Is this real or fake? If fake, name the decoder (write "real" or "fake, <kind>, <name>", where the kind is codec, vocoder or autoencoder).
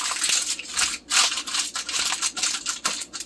real